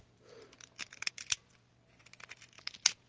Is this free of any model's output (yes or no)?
yes